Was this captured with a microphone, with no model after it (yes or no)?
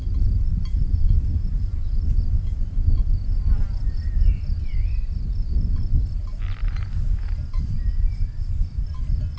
yes